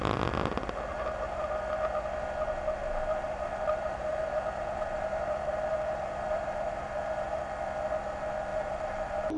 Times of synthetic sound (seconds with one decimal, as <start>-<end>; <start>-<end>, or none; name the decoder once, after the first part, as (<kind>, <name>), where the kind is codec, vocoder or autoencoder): 0.9-1.5 (vocoder, BigVGAN v2); 2.8-7.4; 8.5-9.4

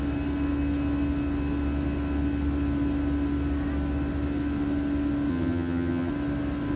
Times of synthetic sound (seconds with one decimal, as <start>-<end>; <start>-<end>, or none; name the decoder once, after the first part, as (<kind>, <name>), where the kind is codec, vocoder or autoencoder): 5.3-6.1 (vocoder, HiFi-GAN)

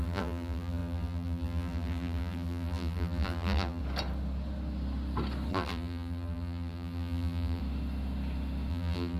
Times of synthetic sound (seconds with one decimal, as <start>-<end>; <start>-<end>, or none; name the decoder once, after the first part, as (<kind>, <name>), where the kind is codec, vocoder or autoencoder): 0.0-3.8 (vocoder, BigVGAN v2); 5.5-7.6; 8.7-9.2

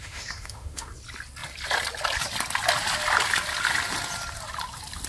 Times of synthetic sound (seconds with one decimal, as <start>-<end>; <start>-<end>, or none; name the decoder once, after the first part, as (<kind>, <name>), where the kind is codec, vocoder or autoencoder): 0.0-0.9 (autoencoder, DAC-VAE)

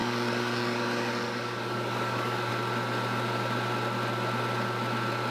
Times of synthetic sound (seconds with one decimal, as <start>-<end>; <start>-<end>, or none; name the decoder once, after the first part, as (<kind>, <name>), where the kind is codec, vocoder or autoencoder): 0.0-2.5 (codec, DAC)

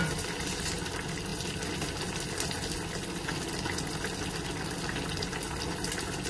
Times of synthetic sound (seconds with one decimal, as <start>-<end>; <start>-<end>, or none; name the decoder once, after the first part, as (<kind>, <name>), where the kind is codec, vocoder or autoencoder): none

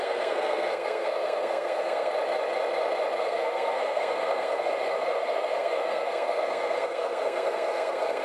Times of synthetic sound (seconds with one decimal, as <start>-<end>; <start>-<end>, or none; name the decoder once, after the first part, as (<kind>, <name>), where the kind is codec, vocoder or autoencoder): 0.0-2.1 (codec, SNAC); 3.2-8.2